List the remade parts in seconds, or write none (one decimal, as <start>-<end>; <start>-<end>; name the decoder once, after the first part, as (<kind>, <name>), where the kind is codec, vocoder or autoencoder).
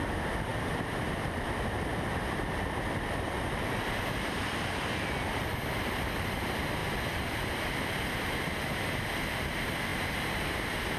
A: 0.5-4.4 (vocoder, BigVGAN v2); 6.8-7.3; 9.9-10.5